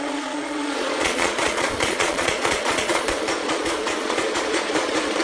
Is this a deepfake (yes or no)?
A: yes